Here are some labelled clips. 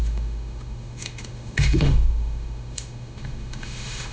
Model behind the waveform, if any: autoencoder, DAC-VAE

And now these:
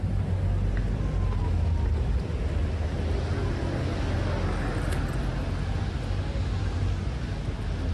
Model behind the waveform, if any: none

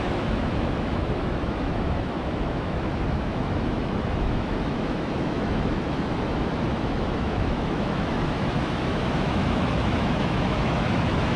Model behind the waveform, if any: autoencoder, DAC-VAE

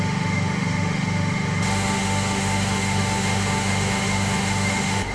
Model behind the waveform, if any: autoencoder, DAC-VAE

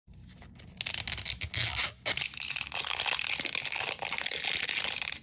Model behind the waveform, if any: none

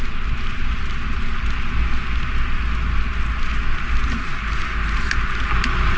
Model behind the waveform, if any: none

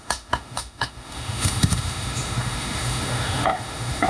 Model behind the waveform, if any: autoencoder, DAC-VAE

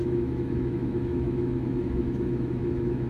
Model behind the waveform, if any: autoencoder, DAC-VAE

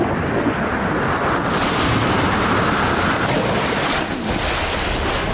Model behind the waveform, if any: none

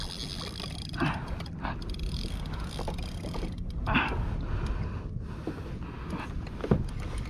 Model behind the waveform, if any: none